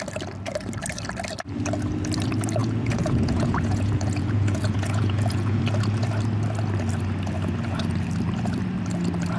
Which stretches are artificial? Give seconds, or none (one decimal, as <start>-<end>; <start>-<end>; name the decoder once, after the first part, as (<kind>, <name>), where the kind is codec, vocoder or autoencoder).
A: 2.6-5.6 (vocoder, Vocos)